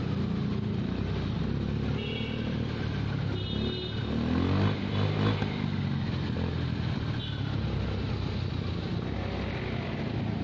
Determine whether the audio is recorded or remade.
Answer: recorded